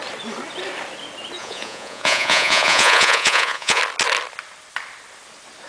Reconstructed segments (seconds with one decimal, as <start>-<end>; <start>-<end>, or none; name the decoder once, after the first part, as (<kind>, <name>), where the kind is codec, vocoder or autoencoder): 1.4-3.8 (vocoder, Vocos)